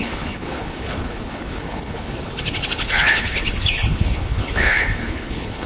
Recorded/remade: remade